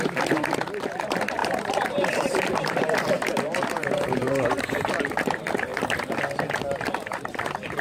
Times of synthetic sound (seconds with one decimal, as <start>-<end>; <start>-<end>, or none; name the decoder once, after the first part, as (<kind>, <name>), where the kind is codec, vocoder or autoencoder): 1.4-4.1 (vocoder, BigVGAN v2)